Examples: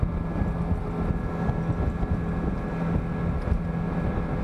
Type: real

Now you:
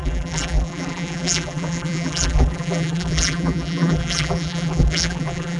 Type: fake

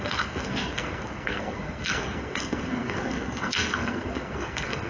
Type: fake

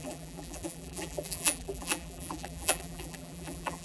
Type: fake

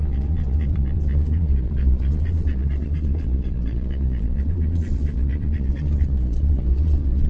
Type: fake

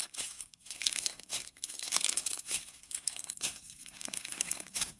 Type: fake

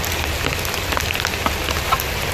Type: real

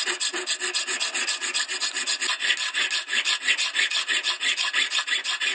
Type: real